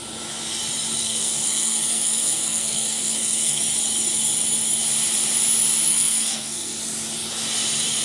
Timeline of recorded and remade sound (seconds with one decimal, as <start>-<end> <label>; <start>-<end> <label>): 0.0-1.0 recorded; 1.0-3.6 remade; 3.6-5.9 recorded; 5.9-6.8 remade; 6.8-8.0 recorded